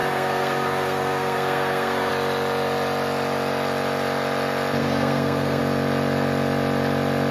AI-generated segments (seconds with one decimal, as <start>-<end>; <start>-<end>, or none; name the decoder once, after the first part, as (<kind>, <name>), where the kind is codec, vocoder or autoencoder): 0.0-2.1 (codec, SNAC); 4.8-5.6